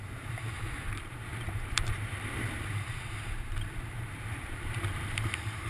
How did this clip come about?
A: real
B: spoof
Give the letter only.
B